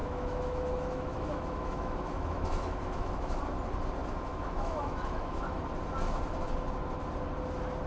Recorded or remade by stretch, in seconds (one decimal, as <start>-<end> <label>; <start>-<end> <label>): 0.0-3.4 remade; 3.4-4.0 recorded; 4.0-5.6 remade; 5.6-7.9 recorded